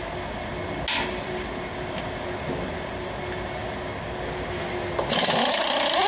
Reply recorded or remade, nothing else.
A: recorded